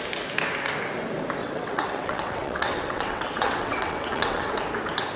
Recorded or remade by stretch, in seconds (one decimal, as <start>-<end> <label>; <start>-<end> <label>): 0.0-1.4 recorded; 1.4-4.5 remade; 4.5-5.2 recorded